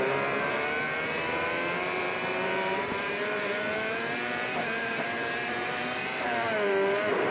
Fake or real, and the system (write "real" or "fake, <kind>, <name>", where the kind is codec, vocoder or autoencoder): fake, vocoder, BigVGAN v2